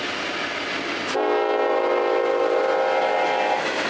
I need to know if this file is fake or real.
real